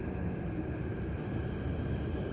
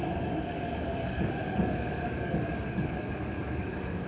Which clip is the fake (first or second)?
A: second